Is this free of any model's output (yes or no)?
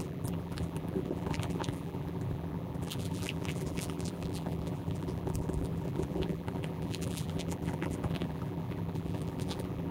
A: no